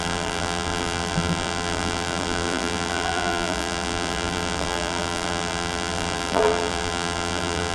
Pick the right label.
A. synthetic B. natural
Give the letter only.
A